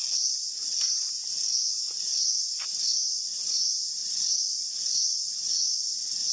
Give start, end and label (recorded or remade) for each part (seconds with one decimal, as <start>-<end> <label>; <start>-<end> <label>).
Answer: 0.0-6.3 recorded